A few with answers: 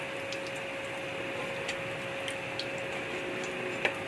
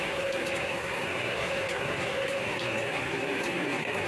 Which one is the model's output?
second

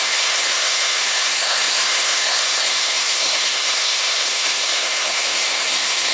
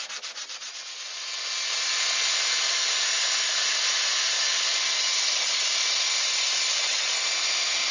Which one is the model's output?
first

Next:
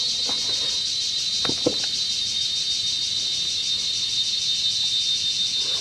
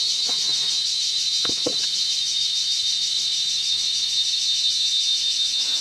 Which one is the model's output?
second